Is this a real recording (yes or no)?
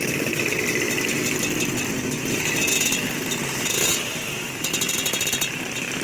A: yes